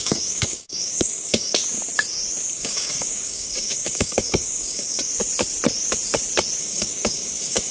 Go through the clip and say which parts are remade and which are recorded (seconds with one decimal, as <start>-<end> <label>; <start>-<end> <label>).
0.0-1.6 remade; 1.6-2.5 recorded; 2.5-5.1 remade; 5.1-6.6 recorded; 6.6-7.7 remade